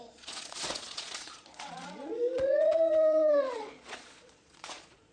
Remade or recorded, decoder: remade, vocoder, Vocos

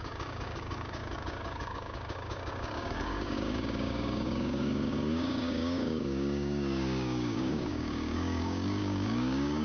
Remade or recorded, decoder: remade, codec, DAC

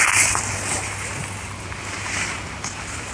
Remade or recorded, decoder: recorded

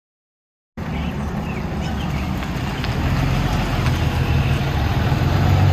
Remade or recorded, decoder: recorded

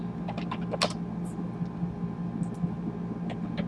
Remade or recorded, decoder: recorded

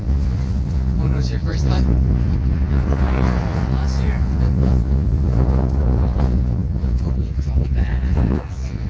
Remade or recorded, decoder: remade, vocoder, Vocos